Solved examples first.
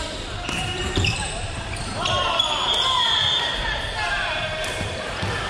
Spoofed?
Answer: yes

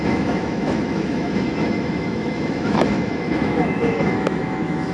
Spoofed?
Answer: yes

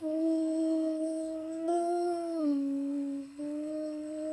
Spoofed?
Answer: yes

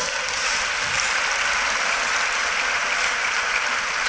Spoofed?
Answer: no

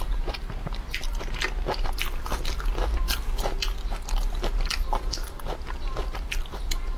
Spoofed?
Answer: no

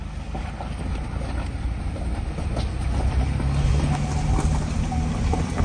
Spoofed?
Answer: no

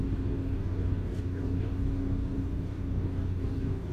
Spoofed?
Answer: yes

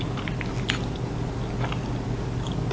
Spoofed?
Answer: no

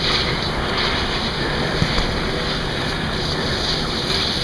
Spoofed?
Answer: no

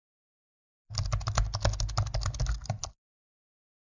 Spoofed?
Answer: no